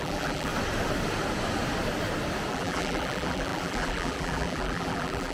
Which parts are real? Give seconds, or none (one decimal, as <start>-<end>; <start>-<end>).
0.5-2.5